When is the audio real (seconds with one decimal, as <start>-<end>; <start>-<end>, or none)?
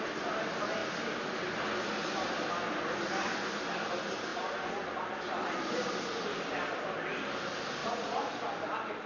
0.0-4.3; 4.8-7.8; 8.4-9.1